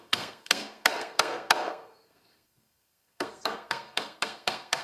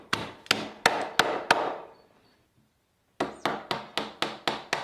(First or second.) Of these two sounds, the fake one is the first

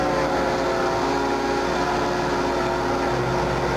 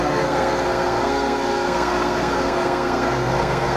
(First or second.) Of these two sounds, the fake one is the second